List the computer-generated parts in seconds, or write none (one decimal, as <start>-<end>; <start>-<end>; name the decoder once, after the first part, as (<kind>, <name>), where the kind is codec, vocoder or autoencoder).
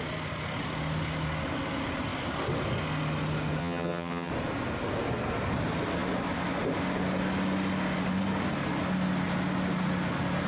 3.6-4.3 (vocoder, HiFi-GAN)